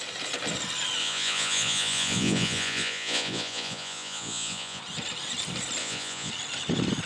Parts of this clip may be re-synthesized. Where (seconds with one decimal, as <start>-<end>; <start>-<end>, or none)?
1.0-4.8; 5.8-6.3